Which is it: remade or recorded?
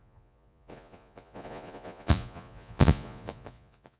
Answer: remade